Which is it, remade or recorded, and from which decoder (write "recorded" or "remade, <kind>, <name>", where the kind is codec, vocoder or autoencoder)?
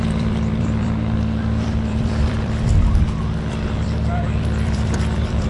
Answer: remade, vocoder, BigVGAN v2